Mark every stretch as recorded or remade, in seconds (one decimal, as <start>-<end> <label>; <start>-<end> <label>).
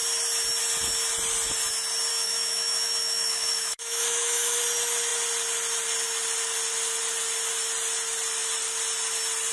0.0-2.1 recorded; 2.1-4.6 remade; 4.6-9.5 recorded